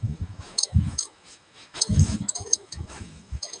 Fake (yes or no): yes